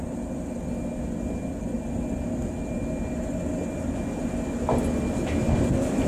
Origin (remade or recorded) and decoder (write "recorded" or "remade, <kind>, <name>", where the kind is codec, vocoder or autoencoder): recorded